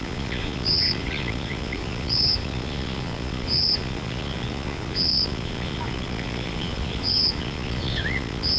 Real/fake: fake